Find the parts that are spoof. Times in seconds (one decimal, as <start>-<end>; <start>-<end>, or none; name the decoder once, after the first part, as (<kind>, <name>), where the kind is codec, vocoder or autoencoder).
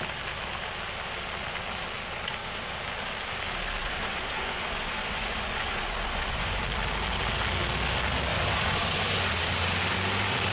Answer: 3.8-6.6 (vocoder, Vocos); 8.3-9.3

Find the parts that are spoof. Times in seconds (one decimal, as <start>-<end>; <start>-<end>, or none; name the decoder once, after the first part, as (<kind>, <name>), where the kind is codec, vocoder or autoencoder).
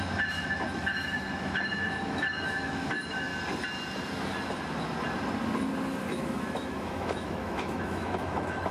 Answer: 0.0-3.3 (autoencoder, DAC-VAE); 6.1-8.7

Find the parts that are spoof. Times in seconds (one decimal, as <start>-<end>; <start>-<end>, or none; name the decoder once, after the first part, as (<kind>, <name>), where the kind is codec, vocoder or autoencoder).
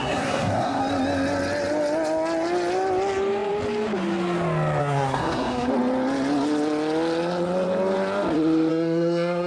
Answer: 0.0-0.8 (codec, SNAC); 4.8-5.7; 8.7-9.5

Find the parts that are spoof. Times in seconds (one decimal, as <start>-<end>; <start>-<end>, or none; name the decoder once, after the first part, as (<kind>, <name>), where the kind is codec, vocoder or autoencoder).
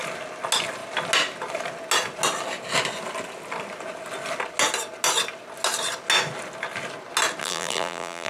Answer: 7.4-8.3 (vocoder, BigVGAN v2)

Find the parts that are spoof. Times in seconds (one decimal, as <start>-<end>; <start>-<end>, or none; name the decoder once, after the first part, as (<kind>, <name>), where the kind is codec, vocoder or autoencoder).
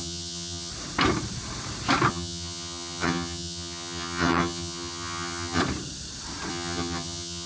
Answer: 0.0-0.7 (vocoder, HiFi-GAN); 2.1-5.6; 6.5-7.5